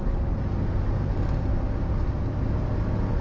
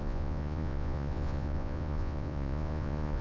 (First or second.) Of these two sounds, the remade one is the second